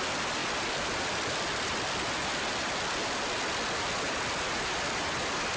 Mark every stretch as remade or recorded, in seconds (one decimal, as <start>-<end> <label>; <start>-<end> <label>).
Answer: 0.0-5.6 recorded